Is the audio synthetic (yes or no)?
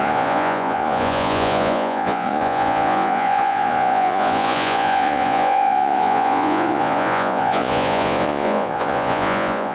yes